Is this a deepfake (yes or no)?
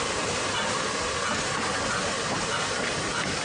no